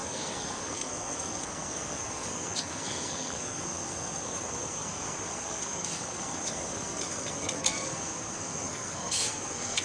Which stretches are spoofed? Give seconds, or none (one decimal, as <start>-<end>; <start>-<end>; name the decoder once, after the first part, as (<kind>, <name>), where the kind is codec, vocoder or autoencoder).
0.0-9.8 (codec, SNAC)